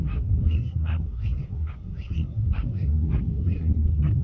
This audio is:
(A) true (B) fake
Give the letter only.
B